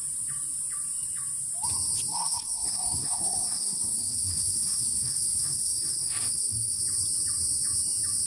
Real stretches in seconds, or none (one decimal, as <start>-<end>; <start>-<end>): 0.0-2.1; 6.8-8.3